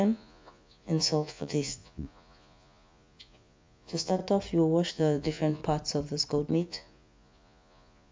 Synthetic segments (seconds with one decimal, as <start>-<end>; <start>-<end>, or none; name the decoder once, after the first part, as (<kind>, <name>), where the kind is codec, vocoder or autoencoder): 0.0-4.2 (vocoder, Vocos); 4.9-5.6; 6.5-8.1